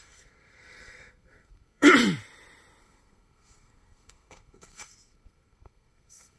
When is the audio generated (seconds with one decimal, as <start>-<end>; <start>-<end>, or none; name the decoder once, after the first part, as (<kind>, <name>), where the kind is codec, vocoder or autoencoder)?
0.0-1.9 (codec, SNAC); 2.8-6.4